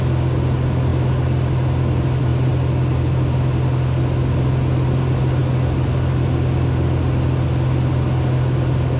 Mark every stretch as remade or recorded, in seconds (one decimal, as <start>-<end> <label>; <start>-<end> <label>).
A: 0.0-9.0 recorded